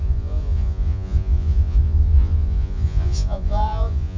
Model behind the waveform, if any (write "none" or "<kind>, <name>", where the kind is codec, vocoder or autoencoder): vocoder, Vocos